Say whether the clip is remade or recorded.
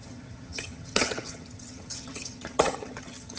remade